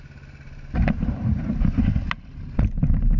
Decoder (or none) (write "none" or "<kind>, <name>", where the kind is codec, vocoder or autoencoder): none